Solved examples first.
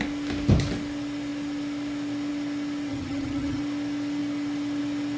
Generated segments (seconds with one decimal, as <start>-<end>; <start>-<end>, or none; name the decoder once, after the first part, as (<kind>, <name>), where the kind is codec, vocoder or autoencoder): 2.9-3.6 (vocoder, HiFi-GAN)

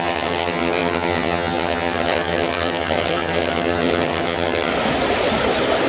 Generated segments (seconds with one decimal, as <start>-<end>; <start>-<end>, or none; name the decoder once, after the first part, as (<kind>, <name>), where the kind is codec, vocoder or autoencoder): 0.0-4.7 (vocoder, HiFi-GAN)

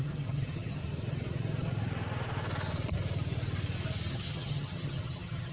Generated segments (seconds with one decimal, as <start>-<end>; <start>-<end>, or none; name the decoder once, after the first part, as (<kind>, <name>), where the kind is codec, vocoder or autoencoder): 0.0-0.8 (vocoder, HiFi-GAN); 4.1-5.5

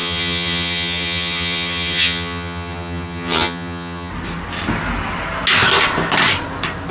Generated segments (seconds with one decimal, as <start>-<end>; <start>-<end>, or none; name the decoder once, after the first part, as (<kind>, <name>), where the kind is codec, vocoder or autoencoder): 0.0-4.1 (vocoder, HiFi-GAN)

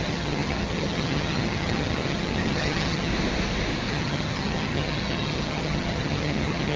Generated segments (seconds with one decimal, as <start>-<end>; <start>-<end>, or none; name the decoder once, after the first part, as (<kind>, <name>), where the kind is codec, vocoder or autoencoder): 0.0-3.1 (vocoder, HiFi-GAN); 3.9-6.8

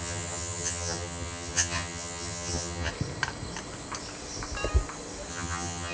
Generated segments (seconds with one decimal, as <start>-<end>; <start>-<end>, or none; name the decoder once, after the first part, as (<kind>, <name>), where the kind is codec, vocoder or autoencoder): 0.0-2.9 (vocoder, HiFi-GAN); 5.3-5.9